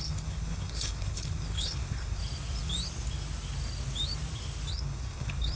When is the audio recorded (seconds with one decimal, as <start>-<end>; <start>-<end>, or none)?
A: 2.2-4.7

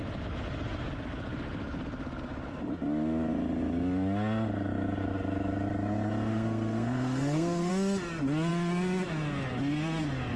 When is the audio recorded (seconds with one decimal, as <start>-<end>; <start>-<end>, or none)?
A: 0.0-6.3; 7.7-10.4

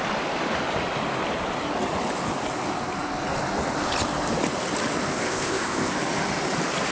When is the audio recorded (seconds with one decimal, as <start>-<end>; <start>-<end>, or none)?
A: 0.0-5.1; 5.9-6.9

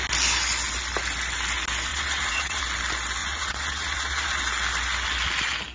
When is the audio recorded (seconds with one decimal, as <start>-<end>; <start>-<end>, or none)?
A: 0.0-1.9; 2.6-3.2; 4.4-5.7

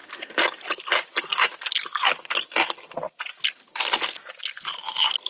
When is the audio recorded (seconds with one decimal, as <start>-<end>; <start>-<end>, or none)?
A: 0.0-5.3

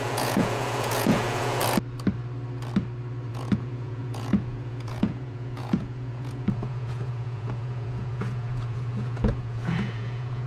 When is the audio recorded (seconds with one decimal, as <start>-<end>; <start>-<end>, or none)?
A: 1.6-3.3

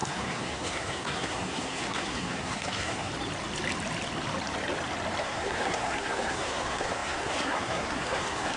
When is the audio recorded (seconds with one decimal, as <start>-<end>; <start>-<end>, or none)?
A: 3.1-5.2

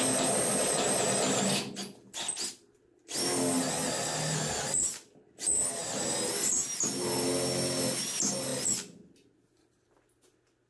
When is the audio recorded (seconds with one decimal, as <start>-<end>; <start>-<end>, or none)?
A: 0.0-10.7